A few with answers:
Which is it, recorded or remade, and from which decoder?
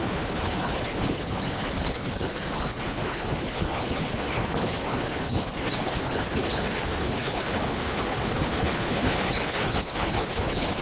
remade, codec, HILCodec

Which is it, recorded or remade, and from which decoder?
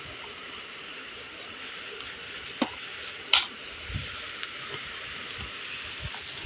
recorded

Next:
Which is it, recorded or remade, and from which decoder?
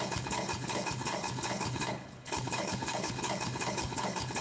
remade, codec, HILCodec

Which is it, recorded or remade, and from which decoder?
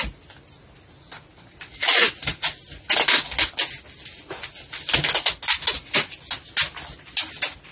recorded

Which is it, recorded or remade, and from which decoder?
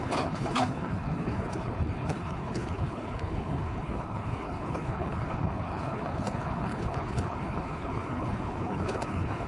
remade, codec, HILCodec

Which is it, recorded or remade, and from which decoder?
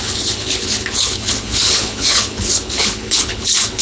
remade, codec, HILCodec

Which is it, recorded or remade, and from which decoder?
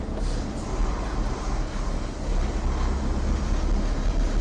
recorded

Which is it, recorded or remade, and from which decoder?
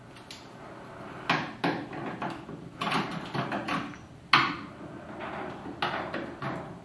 recorded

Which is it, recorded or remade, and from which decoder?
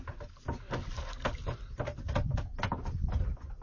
recorded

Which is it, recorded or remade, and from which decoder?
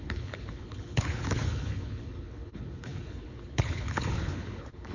remade, codec, HILCodec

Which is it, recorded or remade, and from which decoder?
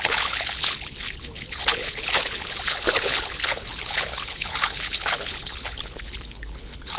remade, codec, HILCodec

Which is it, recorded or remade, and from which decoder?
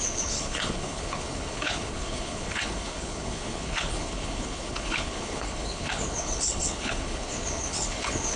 remade, codec, HILCodec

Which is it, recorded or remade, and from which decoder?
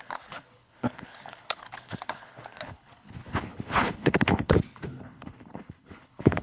remade, codec, HILCodec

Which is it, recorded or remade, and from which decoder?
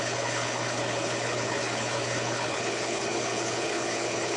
remade, codec, HILCodec